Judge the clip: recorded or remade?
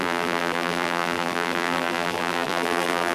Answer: remade